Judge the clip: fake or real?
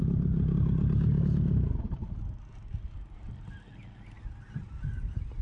real